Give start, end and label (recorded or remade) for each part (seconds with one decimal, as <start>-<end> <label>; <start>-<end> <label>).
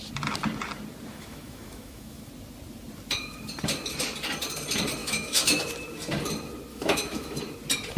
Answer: 0.0-1.1 recorded; 1.1-2.3 remade; 2.3-5.0 recorded; 5.0-5.7 remade; 5.7-6.7 recorded; 6.7-7.4 remade; 7.4-8.0 recorded